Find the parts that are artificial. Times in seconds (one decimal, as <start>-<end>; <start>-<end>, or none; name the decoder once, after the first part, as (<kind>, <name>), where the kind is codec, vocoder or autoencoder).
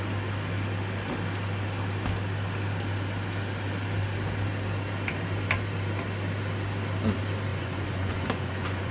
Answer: 7.5-8.9 (vocoder, Vocos)